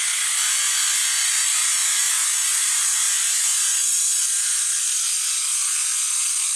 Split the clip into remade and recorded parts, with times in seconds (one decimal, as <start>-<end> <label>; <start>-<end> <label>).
0.0-6.6 recorded